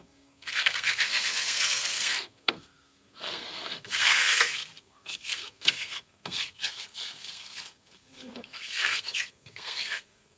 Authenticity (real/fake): fake